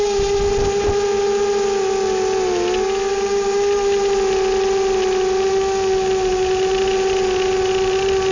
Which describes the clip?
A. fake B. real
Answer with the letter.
B